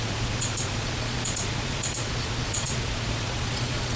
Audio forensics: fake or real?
fake